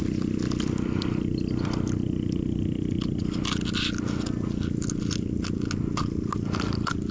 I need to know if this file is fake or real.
real